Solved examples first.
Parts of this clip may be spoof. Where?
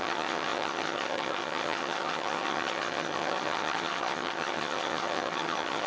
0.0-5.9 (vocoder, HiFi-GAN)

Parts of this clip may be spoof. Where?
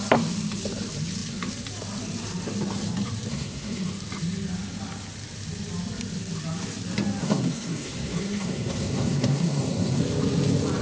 3.3-3.9 (codec, SNAC); 7.2-10.0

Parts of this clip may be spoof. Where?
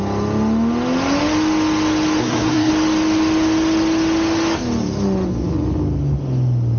2.2-2.7 (codec, SNAC)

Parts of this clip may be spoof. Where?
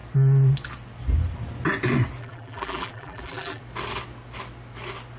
2.2-3.6 (vocoder, BigVGAN v2)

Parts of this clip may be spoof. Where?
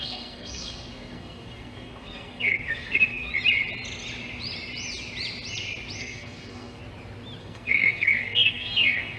0.0-3.3 (codec, SNAC); 6.0-6.8; 7.4-9.2